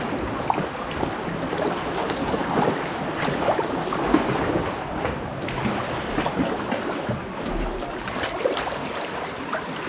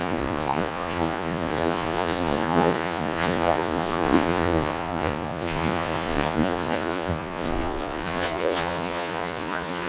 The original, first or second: first